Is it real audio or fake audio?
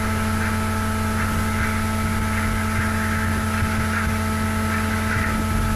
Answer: real